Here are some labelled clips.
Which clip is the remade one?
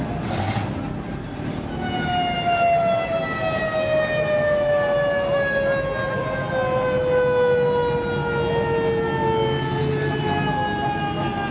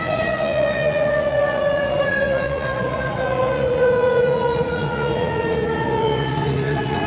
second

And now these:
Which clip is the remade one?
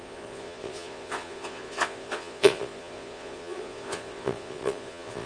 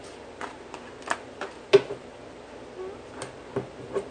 first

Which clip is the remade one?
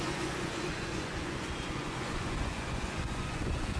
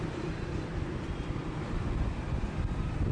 first